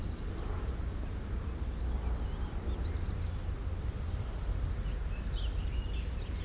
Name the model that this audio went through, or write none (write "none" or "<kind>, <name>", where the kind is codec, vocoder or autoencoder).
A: none